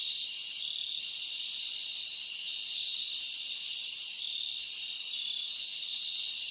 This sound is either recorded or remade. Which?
recorded